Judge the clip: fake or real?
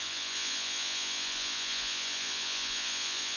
fake